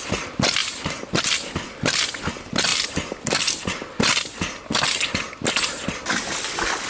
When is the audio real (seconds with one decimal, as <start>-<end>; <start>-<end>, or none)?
0.0-6.9